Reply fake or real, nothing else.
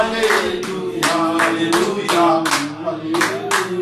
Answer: real